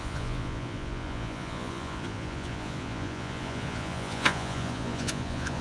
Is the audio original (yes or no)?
no